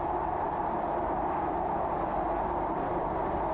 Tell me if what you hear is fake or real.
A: real